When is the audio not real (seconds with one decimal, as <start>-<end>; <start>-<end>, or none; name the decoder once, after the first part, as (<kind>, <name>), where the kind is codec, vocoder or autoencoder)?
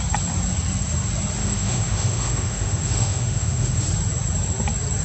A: 1.4-3.8 (autoencoder, DAC-VAE)